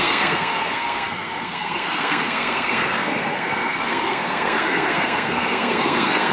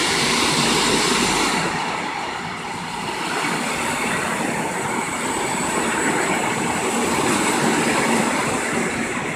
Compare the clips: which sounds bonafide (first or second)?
second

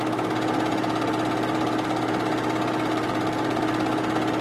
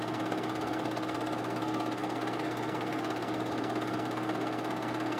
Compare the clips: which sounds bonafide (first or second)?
first